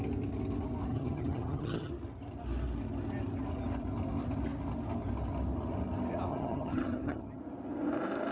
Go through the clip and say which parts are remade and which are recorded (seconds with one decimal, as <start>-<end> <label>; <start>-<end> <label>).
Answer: 0.0-0.9 recorded; 0.9-1.9 remade; 1.9-6.3 recorded; 6.3-7.4 remade; 7.4-8.3 recorded